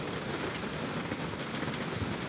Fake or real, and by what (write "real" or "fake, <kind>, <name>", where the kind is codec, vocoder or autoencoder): real